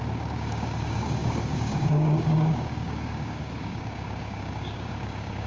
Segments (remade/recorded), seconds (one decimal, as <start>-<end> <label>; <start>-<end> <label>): 0.0-5.5 remade